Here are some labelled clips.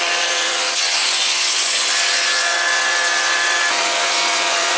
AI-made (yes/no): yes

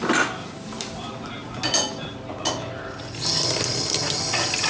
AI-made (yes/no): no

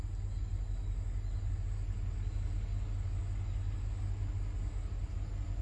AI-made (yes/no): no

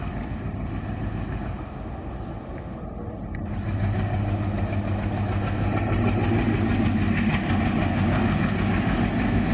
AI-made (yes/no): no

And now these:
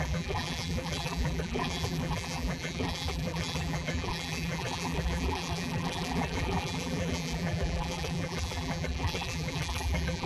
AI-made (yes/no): yes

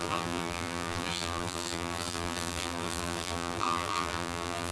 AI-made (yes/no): yes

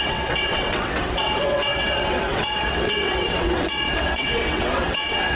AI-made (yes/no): yes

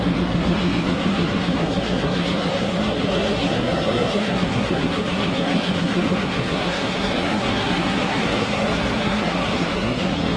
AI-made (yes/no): yes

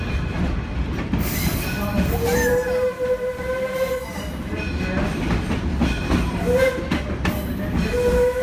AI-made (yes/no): no